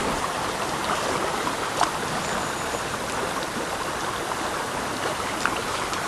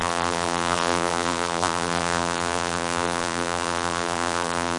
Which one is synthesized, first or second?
second